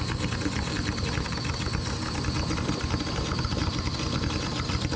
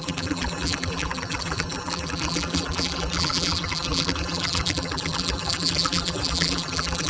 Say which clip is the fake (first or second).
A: second